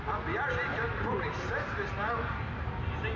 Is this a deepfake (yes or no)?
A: no